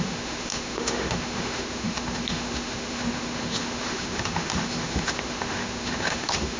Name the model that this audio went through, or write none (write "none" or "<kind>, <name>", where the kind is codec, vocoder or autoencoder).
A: autoencoder, DAC-VAE